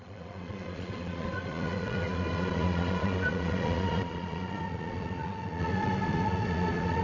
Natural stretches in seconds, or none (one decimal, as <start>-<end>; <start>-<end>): none